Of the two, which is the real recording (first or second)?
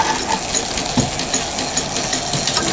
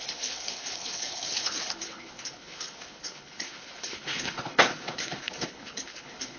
first